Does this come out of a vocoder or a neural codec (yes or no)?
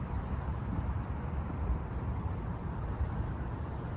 no